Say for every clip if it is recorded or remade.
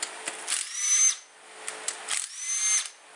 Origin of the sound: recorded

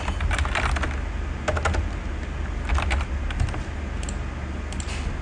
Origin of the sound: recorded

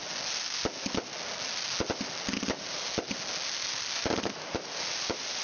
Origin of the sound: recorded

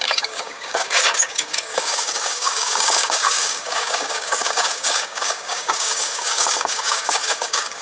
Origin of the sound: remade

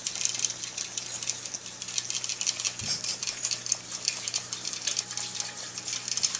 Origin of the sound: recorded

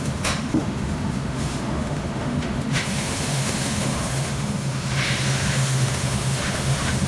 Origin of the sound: remade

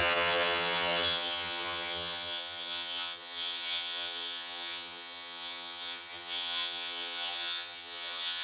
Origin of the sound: remade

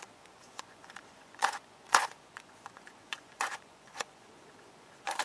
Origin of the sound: remade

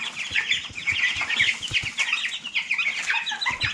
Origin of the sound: recorded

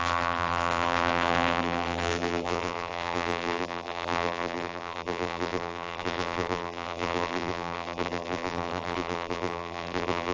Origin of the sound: remade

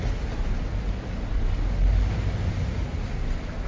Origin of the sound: recorded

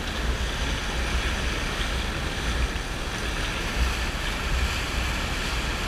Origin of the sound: recorded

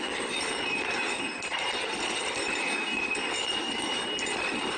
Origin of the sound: remade